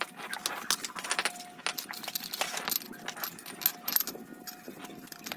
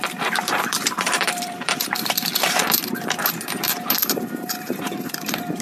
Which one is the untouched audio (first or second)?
first